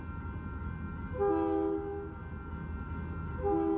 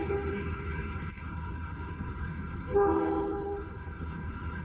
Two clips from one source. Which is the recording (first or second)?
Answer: first